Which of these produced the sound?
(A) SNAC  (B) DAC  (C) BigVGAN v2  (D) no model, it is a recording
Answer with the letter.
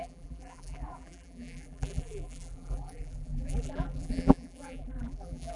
C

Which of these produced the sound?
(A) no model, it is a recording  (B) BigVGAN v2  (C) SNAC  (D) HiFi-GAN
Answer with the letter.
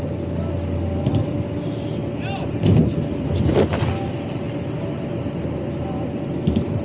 A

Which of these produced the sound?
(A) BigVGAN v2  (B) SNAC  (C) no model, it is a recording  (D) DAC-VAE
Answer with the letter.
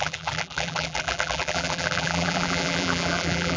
A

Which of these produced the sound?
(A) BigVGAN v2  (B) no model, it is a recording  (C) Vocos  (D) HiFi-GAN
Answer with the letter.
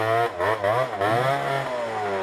B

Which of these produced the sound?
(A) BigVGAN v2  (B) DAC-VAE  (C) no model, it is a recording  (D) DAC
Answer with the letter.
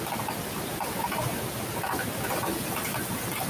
C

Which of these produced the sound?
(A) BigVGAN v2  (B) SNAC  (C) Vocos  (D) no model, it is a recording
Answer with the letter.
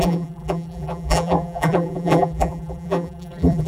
A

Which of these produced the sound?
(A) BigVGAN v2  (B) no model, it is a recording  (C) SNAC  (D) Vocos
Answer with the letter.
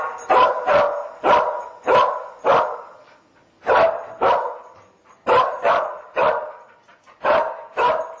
B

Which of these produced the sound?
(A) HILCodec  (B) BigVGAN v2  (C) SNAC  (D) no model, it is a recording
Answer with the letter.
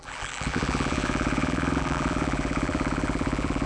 B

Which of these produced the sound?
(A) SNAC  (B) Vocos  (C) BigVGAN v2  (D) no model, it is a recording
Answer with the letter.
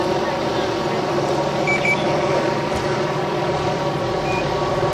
C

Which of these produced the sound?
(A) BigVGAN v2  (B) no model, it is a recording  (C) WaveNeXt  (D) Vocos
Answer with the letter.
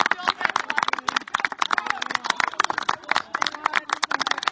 B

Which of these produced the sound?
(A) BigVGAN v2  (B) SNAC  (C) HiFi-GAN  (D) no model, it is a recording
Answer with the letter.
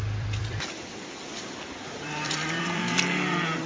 A